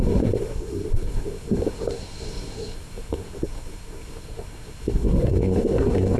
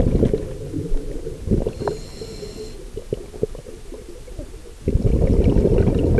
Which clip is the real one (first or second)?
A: second